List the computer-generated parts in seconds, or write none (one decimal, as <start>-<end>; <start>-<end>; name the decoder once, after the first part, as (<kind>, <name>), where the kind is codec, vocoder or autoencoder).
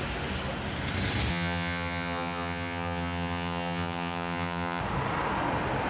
1.3-4.8 (vocoder, HiFi-GAN)